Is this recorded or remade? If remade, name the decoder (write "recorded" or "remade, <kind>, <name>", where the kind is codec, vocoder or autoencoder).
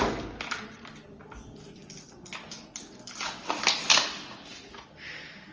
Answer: recorded